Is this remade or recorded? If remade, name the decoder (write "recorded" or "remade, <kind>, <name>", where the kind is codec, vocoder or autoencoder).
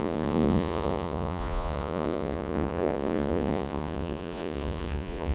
remade, vocoder, Vocos